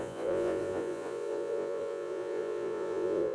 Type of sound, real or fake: fake